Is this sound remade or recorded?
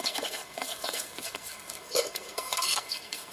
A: remade